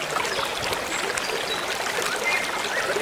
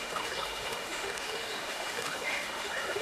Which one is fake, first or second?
second